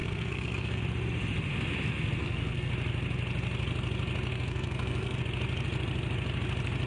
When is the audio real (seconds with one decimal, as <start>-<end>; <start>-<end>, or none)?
0.8-2.2; 2.7-4.3; 5.2-6.9